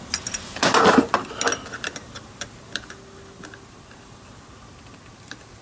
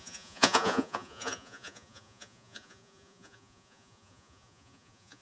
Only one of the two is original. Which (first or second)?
first